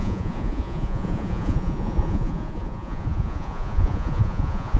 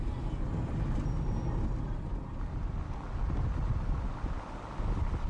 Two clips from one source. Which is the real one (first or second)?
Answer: second